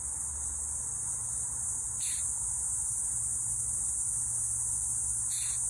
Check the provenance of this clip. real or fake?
real